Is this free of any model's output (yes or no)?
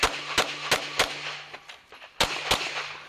yes